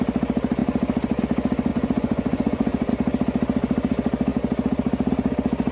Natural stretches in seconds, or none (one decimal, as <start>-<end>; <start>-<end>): 0.0-1.7; 2.9-5.7